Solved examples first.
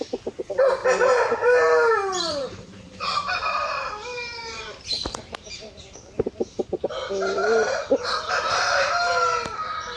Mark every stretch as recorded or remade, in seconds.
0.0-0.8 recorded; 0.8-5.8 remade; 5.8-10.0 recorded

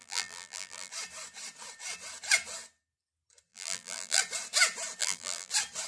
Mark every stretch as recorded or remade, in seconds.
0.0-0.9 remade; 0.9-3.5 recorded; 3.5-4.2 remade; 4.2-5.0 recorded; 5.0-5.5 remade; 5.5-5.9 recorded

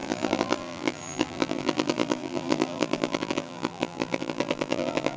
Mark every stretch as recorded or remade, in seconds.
0.0-5.2 remade